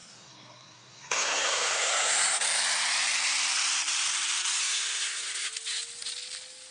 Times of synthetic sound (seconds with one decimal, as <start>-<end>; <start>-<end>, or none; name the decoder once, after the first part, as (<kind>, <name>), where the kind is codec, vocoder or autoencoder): 0.0-2.4 (codec, SNAC); 4.6-5.5